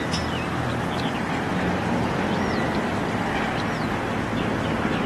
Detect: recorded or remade recorded